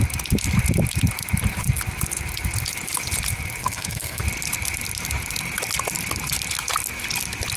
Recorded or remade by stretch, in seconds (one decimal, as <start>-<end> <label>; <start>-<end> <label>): 0.0-3.6 recorded; 3.6-4.2 remade; 4.2-7.6 recorded